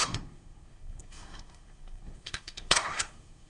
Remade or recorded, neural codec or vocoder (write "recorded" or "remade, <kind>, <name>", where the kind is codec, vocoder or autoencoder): remade, codec, SNAC